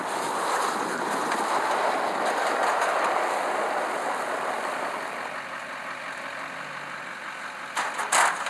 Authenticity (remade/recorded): recorded